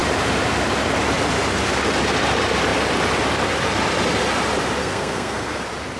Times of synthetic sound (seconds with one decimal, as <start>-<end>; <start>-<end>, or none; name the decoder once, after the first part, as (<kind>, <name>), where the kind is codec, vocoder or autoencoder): 4.8-5.6 (codec, SNAC)